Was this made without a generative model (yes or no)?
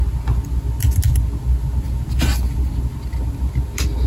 yes